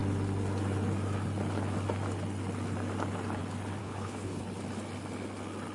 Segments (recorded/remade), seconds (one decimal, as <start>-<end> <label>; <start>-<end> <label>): 0.0-3.8 recorded; 3.8-4.4 remade; 4.4-5.7 recorded